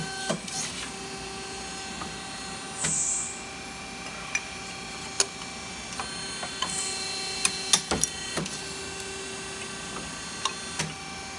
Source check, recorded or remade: recorded